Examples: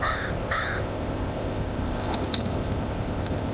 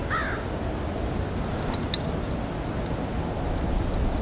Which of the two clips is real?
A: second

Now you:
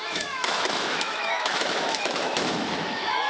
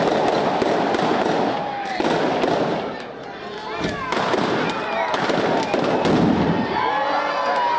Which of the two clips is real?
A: second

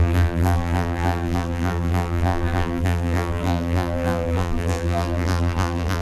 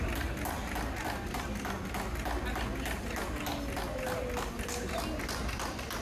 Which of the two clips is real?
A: second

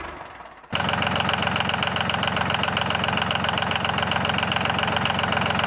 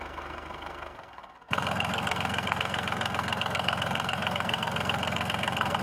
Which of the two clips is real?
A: first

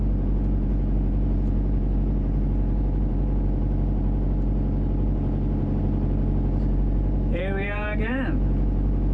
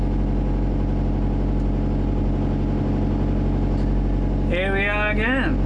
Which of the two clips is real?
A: second